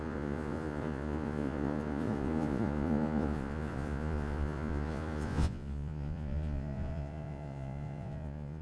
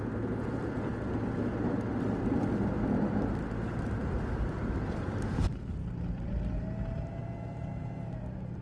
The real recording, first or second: second